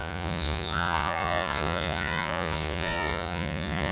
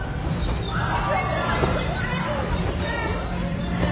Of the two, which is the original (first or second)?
second